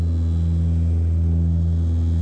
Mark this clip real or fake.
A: real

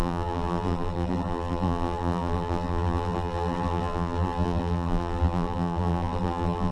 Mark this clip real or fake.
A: fake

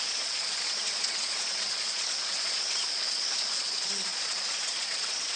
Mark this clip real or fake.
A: fake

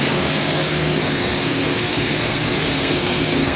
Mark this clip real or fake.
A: fake